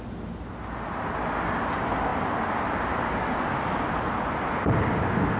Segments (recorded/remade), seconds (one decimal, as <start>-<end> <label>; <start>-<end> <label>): 0.0-5.4 recorded